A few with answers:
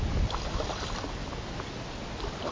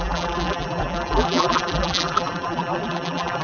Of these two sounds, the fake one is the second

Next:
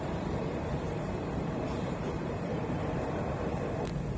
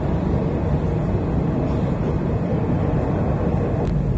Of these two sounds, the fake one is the first